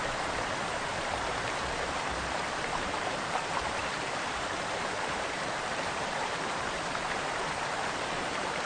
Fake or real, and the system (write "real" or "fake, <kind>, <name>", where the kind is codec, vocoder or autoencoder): fake, vocoder, BigVGAN v2